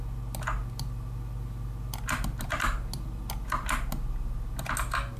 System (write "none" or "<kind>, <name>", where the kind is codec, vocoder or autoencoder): none